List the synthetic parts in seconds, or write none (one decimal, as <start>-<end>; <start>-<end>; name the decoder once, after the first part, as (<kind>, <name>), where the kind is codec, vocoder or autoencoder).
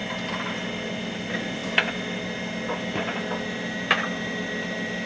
none